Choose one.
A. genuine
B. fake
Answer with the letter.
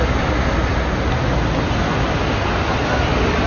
A